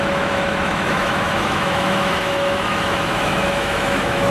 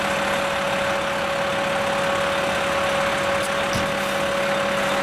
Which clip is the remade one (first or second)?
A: first